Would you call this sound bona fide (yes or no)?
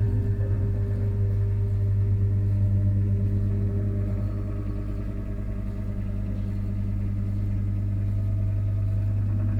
yes